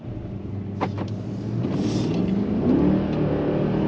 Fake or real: real